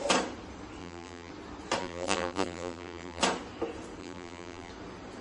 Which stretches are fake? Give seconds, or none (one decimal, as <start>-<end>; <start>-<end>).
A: 0.8-1.3; 1.8-3.2; 4.0-4.7